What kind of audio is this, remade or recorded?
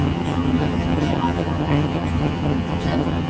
remade